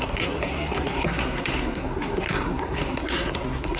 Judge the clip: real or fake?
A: fake